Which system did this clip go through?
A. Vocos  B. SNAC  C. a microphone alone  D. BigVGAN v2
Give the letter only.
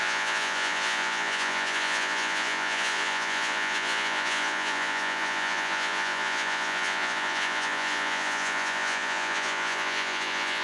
A